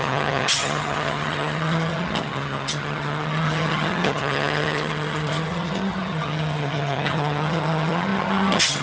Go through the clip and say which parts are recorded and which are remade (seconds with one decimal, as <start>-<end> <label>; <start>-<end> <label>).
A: 0.0-8.8 remade